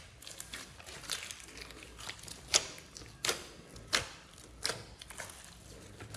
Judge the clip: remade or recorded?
recorded